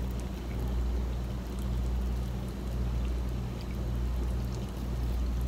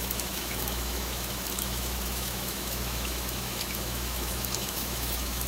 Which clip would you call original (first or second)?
first